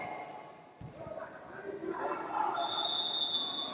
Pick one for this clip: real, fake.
real